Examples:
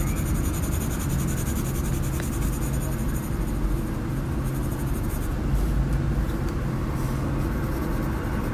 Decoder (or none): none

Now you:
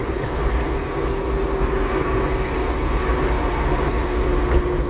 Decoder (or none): none